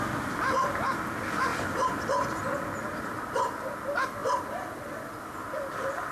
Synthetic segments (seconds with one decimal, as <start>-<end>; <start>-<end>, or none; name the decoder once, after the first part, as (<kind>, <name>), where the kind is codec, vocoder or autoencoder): 1.5-2.4 (vocoder, BigVGAN v2)